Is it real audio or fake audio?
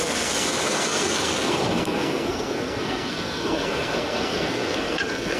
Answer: fake